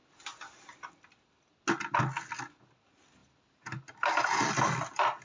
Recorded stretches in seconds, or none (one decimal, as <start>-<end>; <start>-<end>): 0.0-3.2